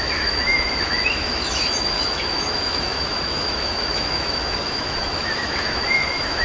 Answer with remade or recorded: remade